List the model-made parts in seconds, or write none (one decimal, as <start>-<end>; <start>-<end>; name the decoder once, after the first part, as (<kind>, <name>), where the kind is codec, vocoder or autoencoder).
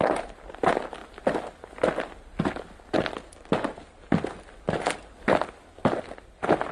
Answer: none